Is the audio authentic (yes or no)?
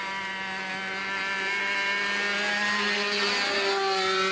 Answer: yes